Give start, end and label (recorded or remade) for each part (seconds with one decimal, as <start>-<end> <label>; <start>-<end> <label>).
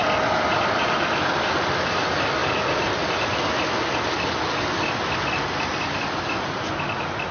0.0-7.3 recorded